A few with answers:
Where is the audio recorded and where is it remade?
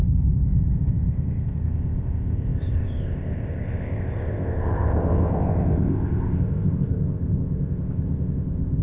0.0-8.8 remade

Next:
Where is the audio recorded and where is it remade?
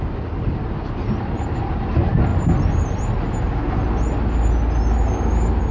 0.0-5.7 recorded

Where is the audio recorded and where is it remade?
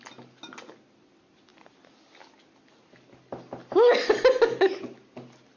0.0-5.6 recorded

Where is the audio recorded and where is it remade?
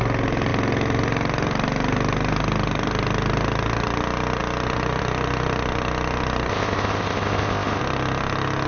0.0-6.5 recorded; 6.5-7.8 remade; 7.8-8.7 recorded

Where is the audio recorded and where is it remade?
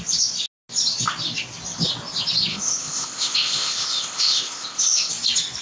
0.0-2.5 recorded; 2.5-5.1 remade; 5.1-5.6 recorded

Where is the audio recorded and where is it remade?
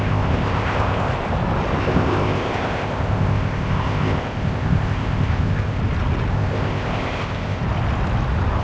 0.0-1.1 remade; 1.1-1.8 recorded; 1.8-5.8 remade; 5.8-6.3 recorded; 6.3-7.6 remade; 7.6-8.6 recorded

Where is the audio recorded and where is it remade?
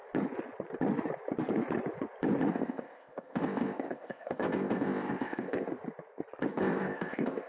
0.0-2.5 recorded; 2.5-5.7 remade; 5.7-6.5 recorded; 6.5-7.5 remade